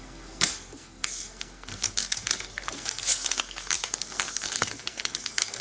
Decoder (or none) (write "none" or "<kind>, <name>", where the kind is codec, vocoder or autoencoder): codec, SNAC